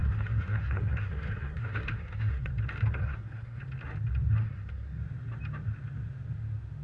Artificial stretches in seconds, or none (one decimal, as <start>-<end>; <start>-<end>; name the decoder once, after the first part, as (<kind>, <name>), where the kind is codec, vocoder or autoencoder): 0.0-2.5 (codec, SNAC); 3.0-3.6; 4.4-5.0